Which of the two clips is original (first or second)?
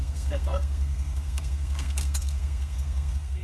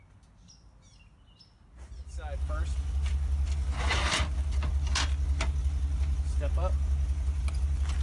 second